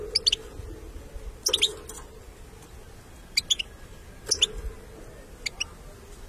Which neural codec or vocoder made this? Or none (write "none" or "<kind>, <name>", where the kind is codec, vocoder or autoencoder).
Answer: none